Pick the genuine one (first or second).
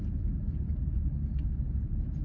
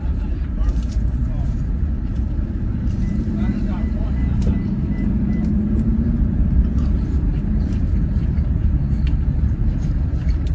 first